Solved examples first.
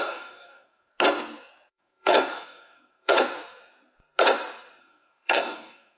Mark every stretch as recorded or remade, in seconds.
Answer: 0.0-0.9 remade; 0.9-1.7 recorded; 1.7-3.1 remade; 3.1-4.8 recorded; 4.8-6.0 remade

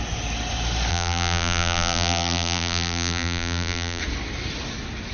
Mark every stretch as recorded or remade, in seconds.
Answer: 0.0-0.9 recorded; 0.9-4.0 remade; 4.0-5.1 recorded

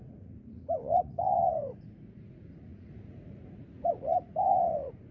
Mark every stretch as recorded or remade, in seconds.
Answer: 0.0-5.1 remade